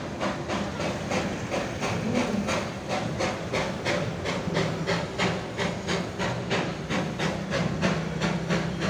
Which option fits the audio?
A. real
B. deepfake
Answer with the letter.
A